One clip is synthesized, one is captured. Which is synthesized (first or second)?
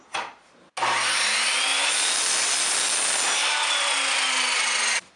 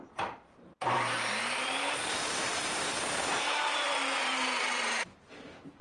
second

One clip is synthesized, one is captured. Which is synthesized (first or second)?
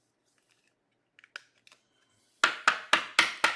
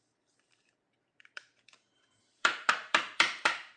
second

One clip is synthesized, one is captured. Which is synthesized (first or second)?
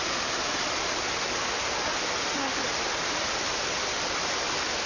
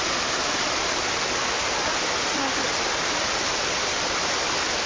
second